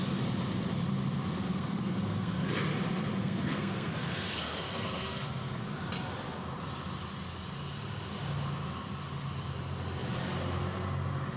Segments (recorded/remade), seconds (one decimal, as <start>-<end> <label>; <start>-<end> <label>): 0.0-1.5 recorded; 1.5-2.5 remade; 2.5-3.2 recorded; 3.2-5.6 remade; 5.6-11.4 recorded